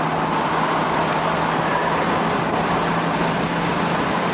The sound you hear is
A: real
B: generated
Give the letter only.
A